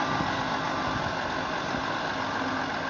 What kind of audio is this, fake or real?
real